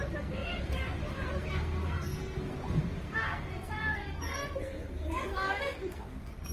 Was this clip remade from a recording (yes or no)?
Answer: yes